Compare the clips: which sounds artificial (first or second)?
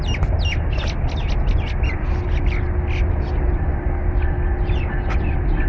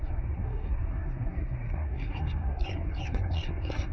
second